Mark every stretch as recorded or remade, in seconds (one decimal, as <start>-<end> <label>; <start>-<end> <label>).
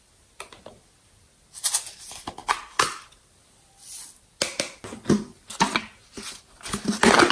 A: 0.0-7.3 recorded